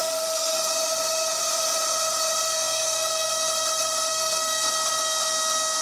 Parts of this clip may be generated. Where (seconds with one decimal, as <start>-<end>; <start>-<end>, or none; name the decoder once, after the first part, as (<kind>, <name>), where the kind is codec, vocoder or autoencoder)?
0.0-0.8 (codec, SNAC); 2.4-3.3; 4.1-4.7